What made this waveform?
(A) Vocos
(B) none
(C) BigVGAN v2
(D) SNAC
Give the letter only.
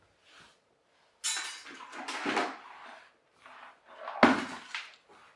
B